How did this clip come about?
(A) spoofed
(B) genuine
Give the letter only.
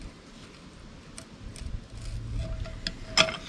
B